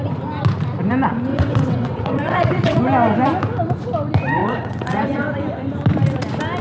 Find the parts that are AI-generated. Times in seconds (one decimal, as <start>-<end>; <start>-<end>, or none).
1.3-2.8; 4.4-5.4